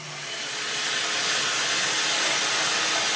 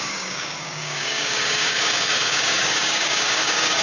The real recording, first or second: first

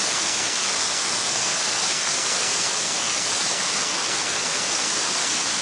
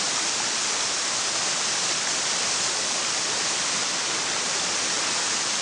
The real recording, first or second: second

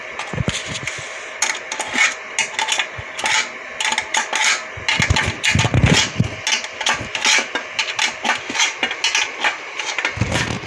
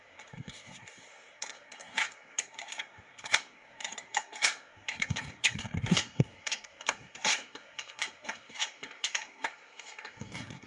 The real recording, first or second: first